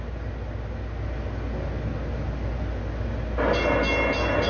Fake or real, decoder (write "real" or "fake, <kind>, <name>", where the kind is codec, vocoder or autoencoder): real